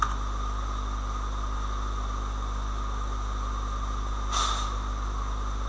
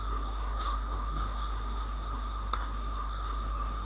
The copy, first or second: second